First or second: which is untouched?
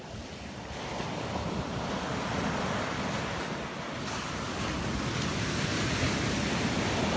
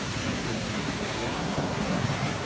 first